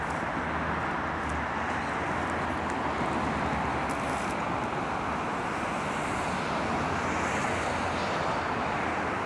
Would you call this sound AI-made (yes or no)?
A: no